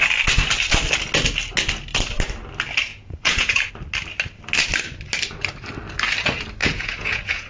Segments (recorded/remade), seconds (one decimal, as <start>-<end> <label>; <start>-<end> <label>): 0.0-2.9 recorded; 2.9-3.7 remade; 3.7-6.6 recorded; 6.6-7.5 remade